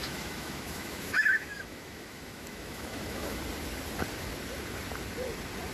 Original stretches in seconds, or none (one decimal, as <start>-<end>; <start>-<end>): 3.4-5.7